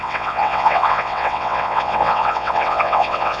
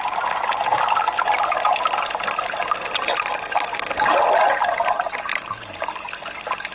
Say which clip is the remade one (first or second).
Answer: first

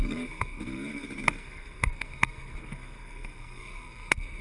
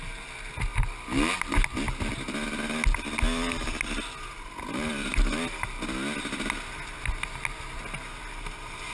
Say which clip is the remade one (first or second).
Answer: first